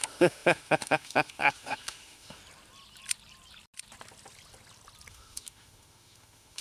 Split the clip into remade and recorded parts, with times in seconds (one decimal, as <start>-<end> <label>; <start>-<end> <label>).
0.0-2.4 remade; 2.4-5.1 recorded; 5.1-6.6 remade